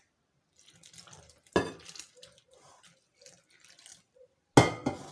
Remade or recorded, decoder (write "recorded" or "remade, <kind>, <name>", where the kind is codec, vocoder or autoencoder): recorded